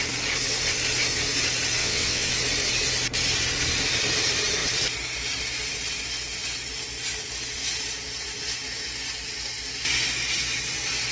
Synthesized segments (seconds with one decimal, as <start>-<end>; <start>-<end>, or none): 1.8-2.3